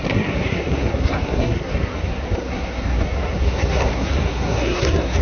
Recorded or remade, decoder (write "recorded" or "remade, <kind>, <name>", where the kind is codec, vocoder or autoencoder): remade, codec, SNAC